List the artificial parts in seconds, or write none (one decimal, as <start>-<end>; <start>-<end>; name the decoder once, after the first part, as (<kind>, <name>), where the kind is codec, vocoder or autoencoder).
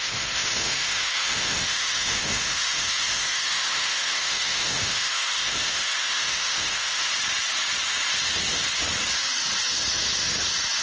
0.0-7.1 (autoencoder, DAC-VAE)